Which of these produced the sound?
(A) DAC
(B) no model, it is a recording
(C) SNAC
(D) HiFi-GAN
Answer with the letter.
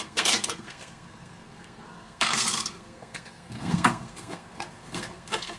C